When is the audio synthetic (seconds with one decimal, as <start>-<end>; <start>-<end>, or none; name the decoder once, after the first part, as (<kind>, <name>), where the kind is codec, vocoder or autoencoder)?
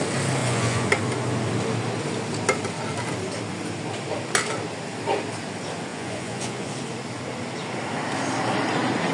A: 0.4-0.9 (vocoder, Vocos); 5.9-6.7